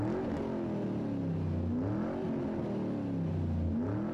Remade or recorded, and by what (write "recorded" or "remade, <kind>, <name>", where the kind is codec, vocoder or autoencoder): recorded